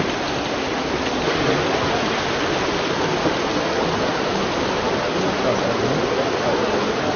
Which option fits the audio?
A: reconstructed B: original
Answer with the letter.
B